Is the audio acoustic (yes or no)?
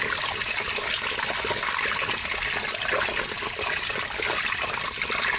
yes